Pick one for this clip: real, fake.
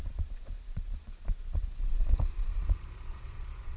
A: fake